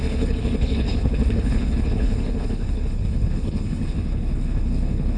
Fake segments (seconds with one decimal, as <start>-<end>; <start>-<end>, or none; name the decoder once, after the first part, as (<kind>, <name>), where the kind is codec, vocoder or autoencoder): 0.0-5.2 (codec, HILCodec)

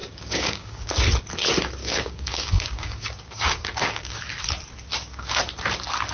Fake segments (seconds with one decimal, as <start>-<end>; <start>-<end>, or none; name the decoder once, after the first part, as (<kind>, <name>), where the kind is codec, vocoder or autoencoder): 0.0-0.9 (codec, DAC); 1.8-4.2; 4.9-5.4

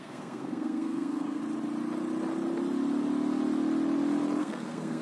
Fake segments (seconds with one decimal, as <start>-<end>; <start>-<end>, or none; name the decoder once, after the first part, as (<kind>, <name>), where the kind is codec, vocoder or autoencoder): 0.0-1.4 (codec, SNAC); 4.4-5.0

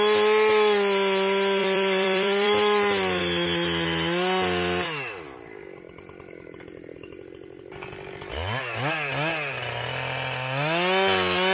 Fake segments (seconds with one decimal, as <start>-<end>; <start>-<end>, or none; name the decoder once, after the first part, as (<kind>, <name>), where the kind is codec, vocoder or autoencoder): 1.6-3.2 (vocoder, BigVGAN v2)

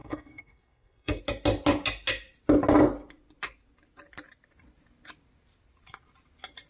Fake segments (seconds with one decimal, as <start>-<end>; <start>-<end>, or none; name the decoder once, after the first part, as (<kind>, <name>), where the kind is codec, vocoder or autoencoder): 0.0-1.2 (codec, SNAC)